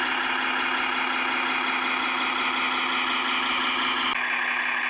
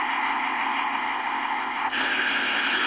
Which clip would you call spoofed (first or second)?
second